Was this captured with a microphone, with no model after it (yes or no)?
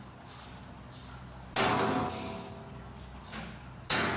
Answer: yes